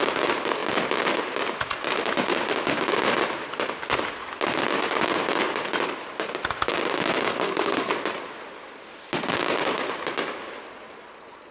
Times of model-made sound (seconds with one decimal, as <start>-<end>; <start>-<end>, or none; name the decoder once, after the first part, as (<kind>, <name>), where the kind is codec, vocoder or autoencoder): 7.3-7.9 (codec, SNAC)